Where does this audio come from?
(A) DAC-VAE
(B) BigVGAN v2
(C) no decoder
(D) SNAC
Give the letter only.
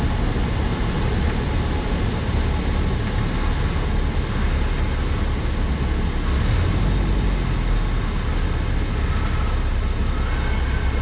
C